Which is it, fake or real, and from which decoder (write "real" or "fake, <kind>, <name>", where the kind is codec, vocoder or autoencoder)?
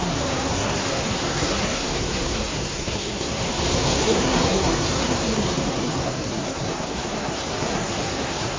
fake, codec, SNAC